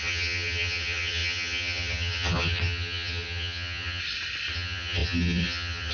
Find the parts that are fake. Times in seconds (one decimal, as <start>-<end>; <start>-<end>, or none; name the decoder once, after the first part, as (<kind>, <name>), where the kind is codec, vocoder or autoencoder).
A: 0.0-4.0 (vocoder, HiFi-GAN); 4.5-5.9